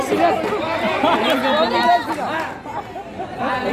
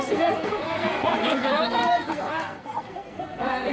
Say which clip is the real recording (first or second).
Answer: first